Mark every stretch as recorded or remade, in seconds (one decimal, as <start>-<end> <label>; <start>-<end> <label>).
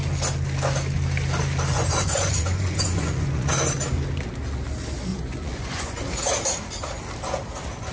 0.0-1.7 recorded; 1.7-3.5 remade; 3.5-5.1 recorded; 5.1-6.0 remade; 6.0-7.9 recorded